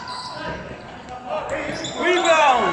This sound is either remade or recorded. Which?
recorded